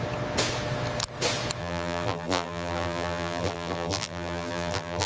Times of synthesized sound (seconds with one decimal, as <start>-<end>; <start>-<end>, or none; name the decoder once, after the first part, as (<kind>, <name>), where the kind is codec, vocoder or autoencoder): 1.6-5.1 (vocoder, BigVGAN v2)

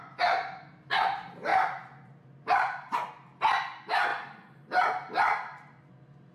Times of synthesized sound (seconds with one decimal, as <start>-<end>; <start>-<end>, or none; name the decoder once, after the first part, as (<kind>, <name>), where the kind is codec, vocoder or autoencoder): 4.1-5.8 (vocoder, BigVGAN v2)

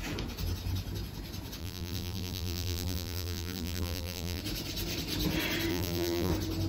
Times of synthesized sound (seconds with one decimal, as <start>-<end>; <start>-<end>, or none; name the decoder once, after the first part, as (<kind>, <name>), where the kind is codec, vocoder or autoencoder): 1.6-4.4 (vocoder, BigVGAN v2); 5.7-6.3

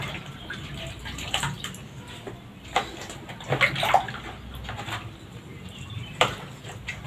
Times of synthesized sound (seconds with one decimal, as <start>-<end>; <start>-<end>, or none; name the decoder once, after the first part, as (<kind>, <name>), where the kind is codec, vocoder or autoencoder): 0.0-1.6 (vocoder, BigVGAN v2); 5.9-7.1

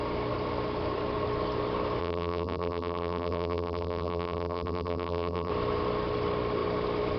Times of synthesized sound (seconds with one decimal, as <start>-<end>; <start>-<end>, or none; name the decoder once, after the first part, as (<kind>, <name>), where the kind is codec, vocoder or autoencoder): 2.0-5.5 (vocoder, BigVGAN v2)

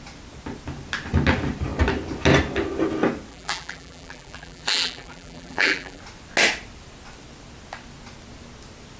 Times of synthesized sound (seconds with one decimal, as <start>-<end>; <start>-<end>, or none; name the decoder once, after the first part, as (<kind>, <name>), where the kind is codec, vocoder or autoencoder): 3.3-6.0 (vocoder, BigVGAN v2)

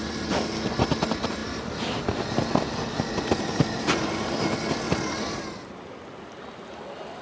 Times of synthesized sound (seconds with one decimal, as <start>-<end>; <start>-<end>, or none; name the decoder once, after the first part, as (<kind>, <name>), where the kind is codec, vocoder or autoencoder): none